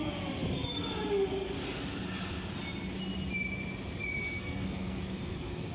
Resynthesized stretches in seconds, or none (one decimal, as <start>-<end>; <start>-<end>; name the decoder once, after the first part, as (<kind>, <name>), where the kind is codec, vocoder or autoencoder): 4.4-5.7 (codec, SNAC)